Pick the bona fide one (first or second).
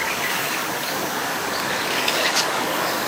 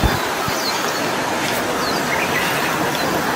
second